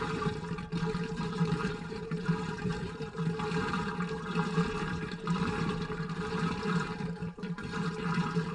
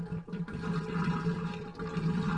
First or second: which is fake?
first